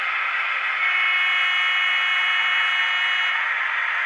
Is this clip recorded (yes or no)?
yes